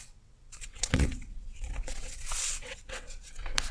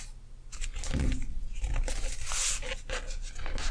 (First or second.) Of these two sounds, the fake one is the first